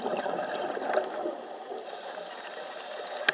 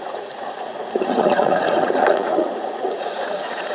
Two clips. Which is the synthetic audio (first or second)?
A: second